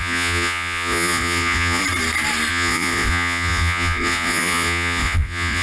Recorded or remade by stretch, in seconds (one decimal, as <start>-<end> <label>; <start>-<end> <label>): 0.0-1.8 remade; 1.8-2.5 recorded; 2.5-5.6 remade